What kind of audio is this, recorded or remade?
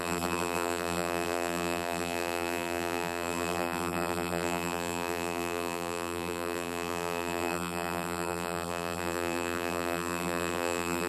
remade